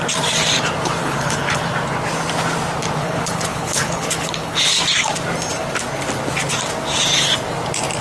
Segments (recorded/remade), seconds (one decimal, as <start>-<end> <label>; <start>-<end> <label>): 0.0-1.0 recorded; 1.0-1.6 remade; 1.6-3.0 recorded; 3.0-4.8 remade; 4.8-8.0 recorded